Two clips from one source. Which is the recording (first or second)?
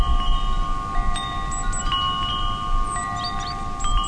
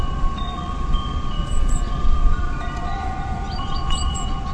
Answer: first